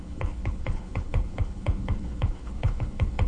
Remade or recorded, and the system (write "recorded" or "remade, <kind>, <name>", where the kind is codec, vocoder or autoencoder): remade, codec, HILCodec